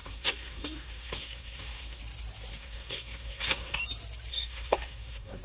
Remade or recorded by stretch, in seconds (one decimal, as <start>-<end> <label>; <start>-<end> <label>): 0.0-2.0 remade; 2.0-2.5 recorded; 2.5-3.8 remade; 3.8-4.3 recorded; 4.3-5.4 remade